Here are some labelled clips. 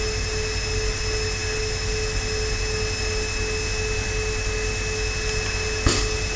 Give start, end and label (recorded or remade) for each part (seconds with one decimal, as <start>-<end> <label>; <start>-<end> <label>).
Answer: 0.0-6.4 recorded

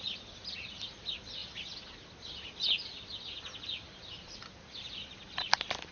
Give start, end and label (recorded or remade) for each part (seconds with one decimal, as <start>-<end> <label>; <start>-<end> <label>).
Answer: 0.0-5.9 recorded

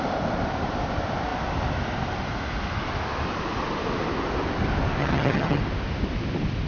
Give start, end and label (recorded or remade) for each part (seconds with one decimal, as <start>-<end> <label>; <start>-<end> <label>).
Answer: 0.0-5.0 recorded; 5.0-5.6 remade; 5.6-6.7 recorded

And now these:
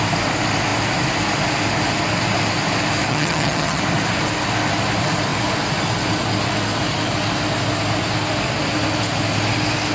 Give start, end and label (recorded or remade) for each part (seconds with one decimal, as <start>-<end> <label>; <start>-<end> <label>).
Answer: 0.0-3.1 recorded; 3.1-3.8 remade; 3.8-9.9 recorded